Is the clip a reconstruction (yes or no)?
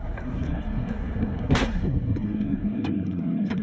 yes